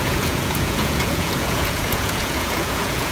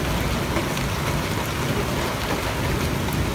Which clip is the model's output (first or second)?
first